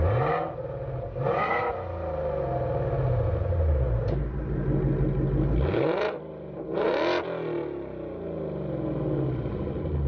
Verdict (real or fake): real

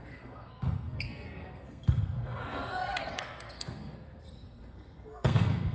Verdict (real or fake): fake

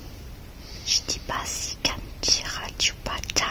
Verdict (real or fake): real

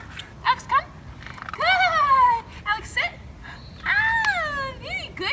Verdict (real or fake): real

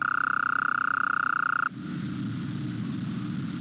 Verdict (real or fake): real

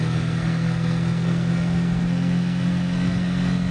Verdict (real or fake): fake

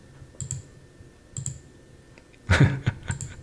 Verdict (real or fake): real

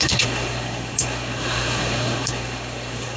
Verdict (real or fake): fake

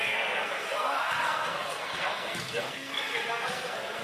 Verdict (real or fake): fake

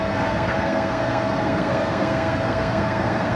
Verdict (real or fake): fake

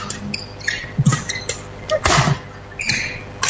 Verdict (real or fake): real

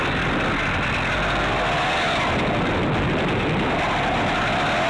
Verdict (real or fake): real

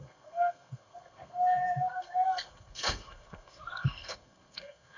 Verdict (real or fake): fake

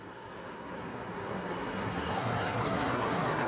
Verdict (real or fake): fake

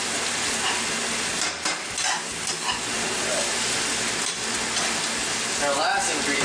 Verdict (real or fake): real